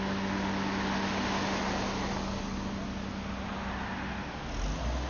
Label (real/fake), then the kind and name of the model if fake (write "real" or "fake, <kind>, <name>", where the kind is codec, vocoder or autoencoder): real